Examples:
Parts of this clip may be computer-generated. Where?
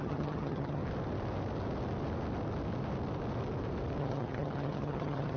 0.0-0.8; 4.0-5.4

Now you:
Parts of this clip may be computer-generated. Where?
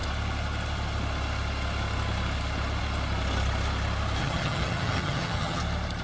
4.2-5.6